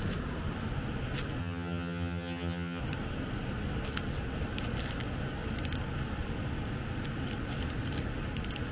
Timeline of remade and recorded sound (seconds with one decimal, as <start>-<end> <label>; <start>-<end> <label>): 0.0-1.4 recorded; 1.4-2.8 remade; 2.8-8.7 recorded